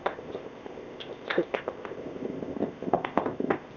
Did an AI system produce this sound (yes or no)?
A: yes